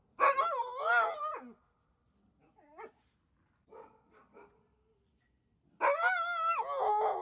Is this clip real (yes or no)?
yes